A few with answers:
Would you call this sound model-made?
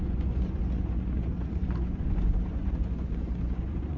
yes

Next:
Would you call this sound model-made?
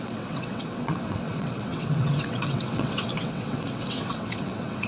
yes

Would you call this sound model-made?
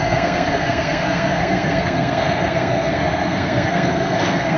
yes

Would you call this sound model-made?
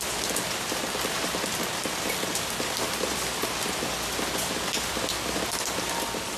no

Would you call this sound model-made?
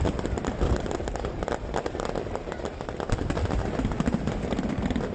yes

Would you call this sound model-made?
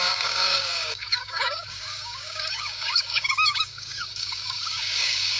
yes